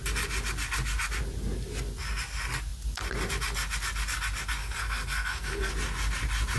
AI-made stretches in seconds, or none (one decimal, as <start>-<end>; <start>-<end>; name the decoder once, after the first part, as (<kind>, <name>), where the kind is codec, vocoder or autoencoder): 4.6-5.7 (codec, SNAC)